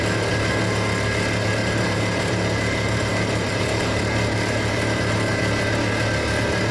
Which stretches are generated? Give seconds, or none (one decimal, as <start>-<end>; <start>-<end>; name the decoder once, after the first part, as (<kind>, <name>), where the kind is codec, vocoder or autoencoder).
1.6-5.1 (vocoder, BigVGAN v2)